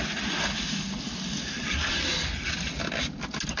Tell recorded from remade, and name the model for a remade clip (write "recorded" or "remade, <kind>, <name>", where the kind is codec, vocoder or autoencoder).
recorded